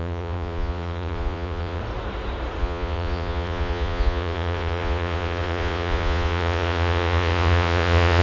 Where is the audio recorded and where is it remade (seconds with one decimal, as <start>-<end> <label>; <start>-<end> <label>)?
0.0-1.8 remade; 1.8-2.6 recorded; 2.6-8.2 remade